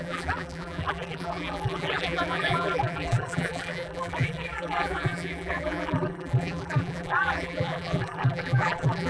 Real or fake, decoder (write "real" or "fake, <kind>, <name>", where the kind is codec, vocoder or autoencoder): fake, vocoder, BigVGAN v2